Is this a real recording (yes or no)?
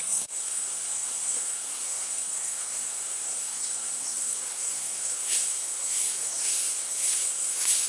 no